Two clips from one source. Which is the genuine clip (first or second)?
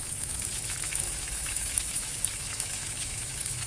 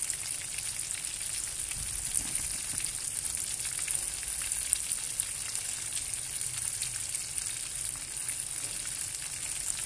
second